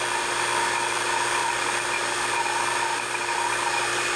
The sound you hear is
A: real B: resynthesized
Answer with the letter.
A